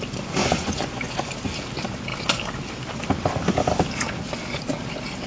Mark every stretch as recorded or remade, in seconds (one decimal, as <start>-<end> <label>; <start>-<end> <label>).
0.0-0.4 recorded; 0.4-1.3 remade; 1.3-5.3 recorded